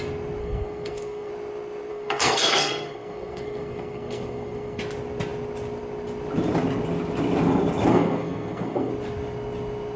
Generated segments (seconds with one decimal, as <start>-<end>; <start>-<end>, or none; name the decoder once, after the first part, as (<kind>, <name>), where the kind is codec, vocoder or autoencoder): 0.4-1.3 (codec, SNAC); 1.9-4.8; 7.9-8.9